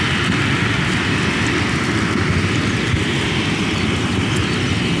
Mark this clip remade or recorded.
recorded